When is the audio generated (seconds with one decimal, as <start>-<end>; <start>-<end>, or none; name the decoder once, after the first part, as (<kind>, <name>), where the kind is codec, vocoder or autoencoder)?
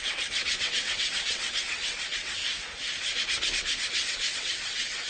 0.0-2.4 (vocoder, WaveNeXt); 4.4-5.1